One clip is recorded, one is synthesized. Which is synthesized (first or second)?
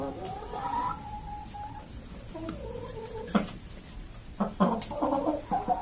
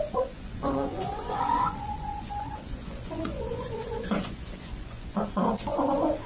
second